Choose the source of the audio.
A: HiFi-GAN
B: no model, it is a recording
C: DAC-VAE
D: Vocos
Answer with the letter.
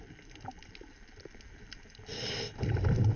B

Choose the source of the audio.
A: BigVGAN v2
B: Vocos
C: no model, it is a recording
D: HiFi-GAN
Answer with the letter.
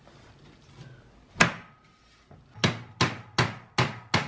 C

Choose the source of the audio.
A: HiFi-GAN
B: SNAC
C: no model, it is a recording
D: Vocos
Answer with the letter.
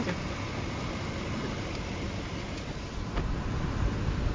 C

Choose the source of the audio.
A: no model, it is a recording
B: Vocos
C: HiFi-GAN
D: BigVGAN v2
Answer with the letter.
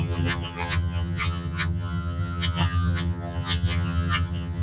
C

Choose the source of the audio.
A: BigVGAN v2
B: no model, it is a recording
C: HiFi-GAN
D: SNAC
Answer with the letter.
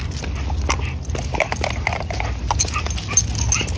B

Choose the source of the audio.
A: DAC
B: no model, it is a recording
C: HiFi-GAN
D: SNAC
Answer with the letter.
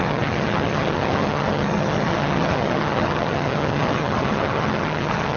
C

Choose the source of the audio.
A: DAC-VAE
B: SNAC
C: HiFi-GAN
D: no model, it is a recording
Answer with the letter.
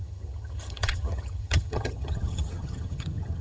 C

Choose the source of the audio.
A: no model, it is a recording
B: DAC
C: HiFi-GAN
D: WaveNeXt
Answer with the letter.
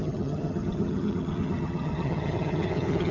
C